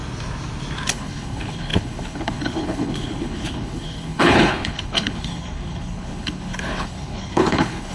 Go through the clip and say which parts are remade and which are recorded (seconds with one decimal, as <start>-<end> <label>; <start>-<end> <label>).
0.0-0.9 recorded; 0.9-7.9 remade

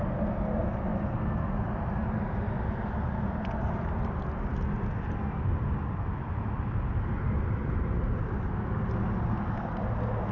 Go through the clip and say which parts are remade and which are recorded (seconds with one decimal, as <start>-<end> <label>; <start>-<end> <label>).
0.0-0.9 recorded; 0.9-1.4 remade; 1.4-10.3 recorded

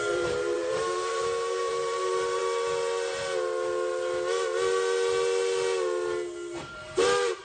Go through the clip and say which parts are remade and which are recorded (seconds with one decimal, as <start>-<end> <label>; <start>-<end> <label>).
0.0-2.4 remade; 2.4-6.6 recorded; 6.6-7.4 remade

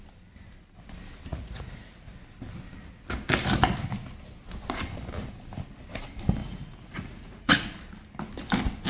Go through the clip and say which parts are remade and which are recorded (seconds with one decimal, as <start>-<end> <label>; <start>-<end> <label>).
0.0-1.3 recorded; 1.3-2.1 remade; 2.1-6.4 recorded; 6.4-7.8 remade; 7.8-8.9 recorded